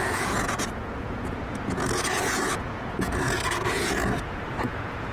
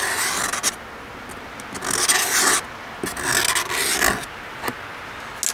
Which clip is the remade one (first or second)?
first